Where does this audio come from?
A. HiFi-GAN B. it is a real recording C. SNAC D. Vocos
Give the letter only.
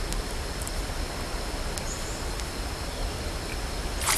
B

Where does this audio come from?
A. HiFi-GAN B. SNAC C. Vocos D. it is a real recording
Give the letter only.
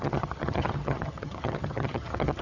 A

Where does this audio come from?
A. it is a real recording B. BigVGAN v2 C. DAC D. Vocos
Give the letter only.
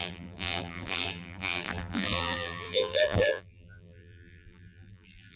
B